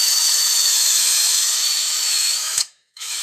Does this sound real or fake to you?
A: fake